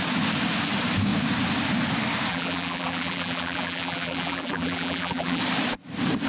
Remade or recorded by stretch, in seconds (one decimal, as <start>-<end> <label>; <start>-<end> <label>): 0.0-2.3 recorded; 2.3-5.4 remade; 5.4-6.3 recorded